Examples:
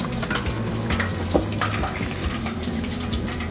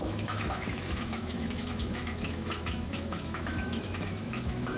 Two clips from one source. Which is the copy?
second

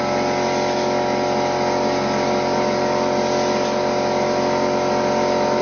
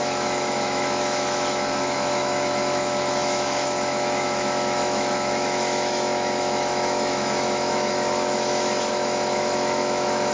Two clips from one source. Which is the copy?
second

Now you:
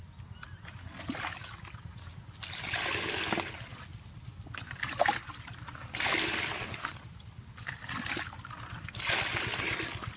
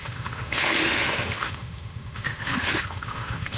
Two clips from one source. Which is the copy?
second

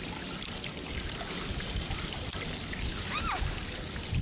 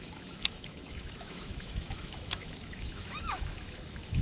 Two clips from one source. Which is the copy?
second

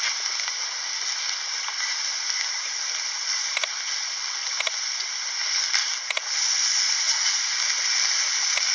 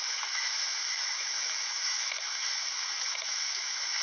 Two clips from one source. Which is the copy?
second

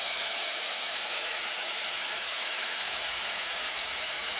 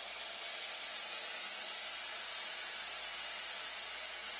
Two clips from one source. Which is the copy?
first